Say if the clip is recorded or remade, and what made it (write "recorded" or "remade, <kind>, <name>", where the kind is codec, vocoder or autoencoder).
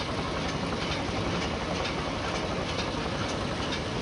recorded